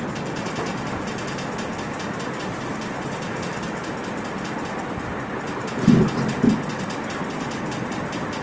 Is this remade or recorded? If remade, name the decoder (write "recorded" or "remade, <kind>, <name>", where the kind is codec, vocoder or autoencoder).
recorded